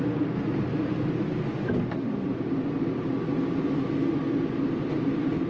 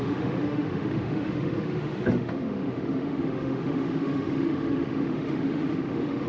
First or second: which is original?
first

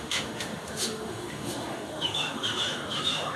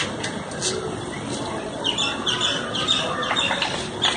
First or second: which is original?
second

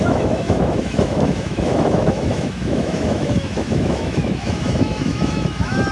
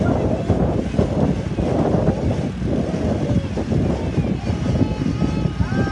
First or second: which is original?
second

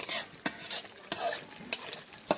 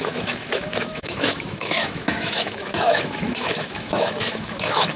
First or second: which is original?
first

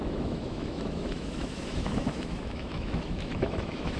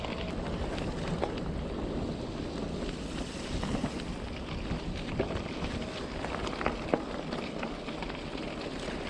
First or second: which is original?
second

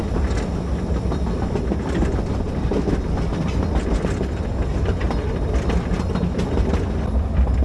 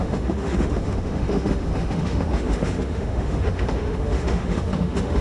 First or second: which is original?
first